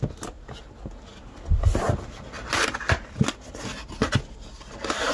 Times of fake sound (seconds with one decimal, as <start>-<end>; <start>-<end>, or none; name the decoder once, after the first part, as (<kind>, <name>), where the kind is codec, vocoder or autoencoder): none